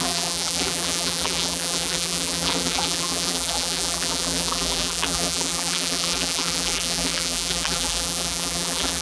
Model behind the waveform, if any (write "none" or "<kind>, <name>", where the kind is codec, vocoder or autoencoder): vocoder, BigVGAN v2